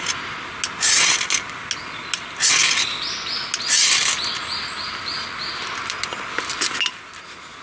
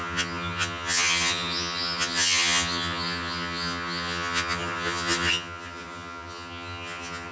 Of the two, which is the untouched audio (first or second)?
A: first